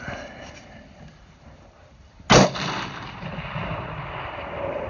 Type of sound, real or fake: real